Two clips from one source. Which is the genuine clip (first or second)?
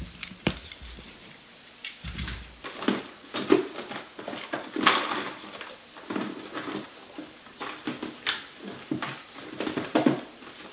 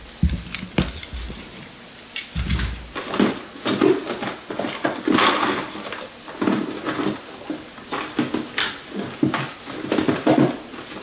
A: second